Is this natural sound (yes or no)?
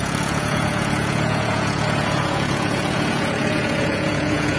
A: no